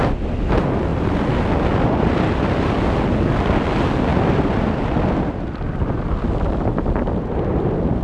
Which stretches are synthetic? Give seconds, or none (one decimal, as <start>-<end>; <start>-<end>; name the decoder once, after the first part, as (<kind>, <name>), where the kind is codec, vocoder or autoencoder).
0.9-3.2 (vocoder, BigVGAN v2); 4.1-5.9